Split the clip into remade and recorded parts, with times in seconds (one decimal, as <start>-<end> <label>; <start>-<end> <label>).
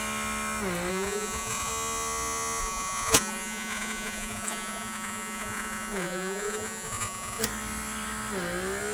0.0-0.9 recorded; 0.9-1.7 remade; 1.7-2.6 recorded; 2.6-7.4 remade; 7.4-8.9 recorded